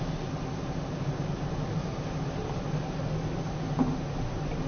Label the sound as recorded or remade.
recorded